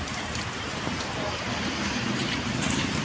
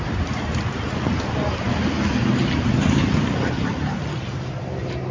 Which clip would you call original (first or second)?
second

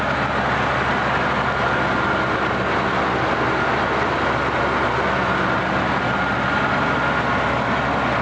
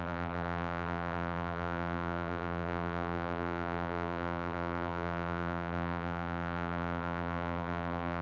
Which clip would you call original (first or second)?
first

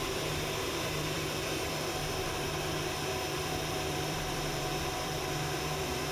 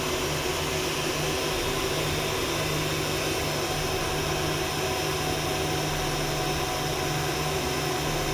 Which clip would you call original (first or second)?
second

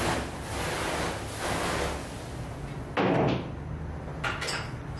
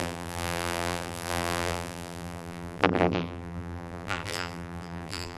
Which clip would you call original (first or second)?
first